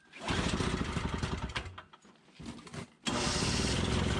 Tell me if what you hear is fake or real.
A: fake